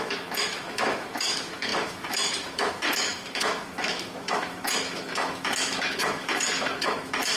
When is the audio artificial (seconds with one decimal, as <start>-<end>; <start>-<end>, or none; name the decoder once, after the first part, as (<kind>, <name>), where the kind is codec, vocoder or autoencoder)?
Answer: 0.0-7.4 (autoencoder, DAC-VAE)